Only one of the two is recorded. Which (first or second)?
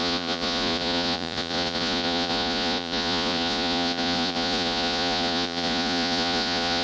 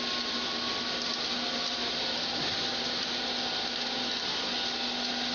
second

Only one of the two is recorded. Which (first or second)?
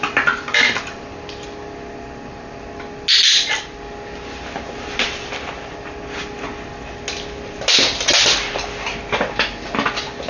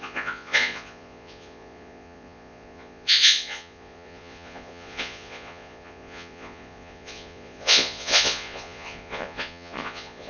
first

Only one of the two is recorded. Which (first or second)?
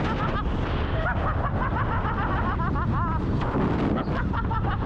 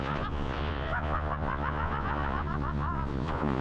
first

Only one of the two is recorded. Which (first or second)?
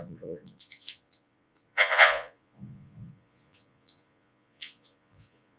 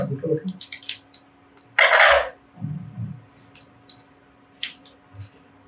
second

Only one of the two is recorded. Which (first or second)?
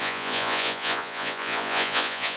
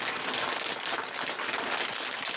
second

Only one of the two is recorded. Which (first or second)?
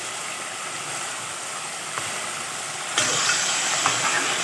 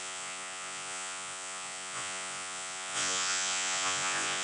first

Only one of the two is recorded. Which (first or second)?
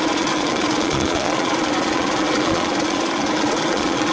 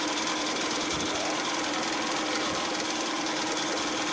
second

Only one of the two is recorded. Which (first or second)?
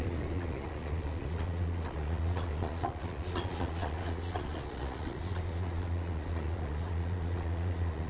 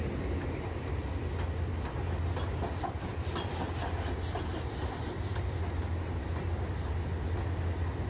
second